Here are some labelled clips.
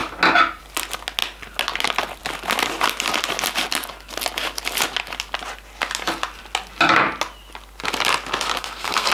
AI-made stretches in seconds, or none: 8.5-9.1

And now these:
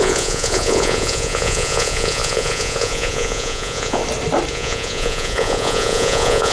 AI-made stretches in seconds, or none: 0.0-4.0; 4.5-6.5